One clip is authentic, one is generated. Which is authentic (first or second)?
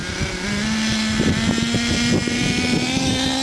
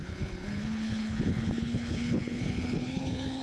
first